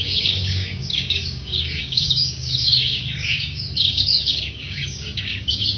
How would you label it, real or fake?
fake